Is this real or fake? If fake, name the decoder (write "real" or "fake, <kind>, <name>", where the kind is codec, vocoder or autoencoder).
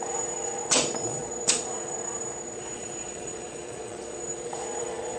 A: fake, vocoder, Vocos